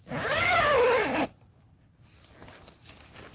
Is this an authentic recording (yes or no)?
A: yes